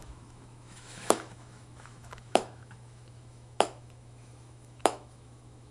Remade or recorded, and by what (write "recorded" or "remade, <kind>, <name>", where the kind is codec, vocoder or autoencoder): remade, autoencoder, DAC-VAE